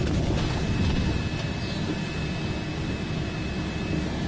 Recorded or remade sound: recorded